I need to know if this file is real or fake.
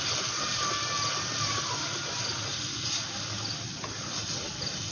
real